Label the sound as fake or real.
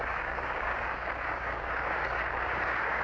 fake